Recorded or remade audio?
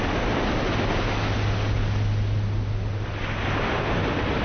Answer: recorded